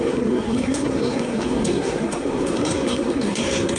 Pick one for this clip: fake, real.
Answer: fake